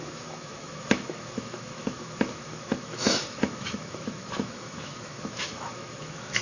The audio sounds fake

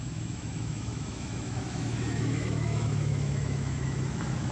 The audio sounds fake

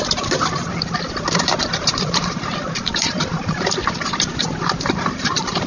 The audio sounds fake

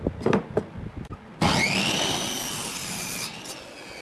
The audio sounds real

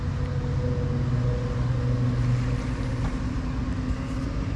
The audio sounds real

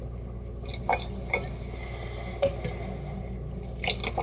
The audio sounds real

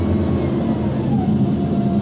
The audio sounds real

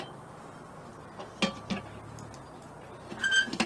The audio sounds real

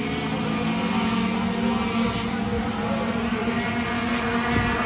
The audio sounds real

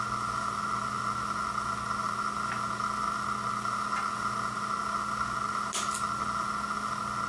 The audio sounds real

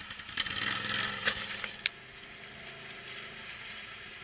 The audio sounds real